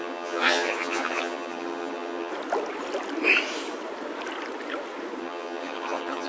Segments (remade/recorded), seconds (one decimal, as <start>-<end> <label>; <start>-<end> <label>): 0.0-2.3 remade; 2.3-5.2 recorded; 5.2-6.3 remade